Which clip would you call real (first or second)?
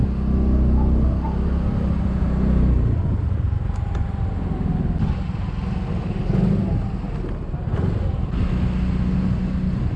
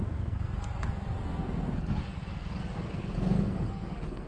first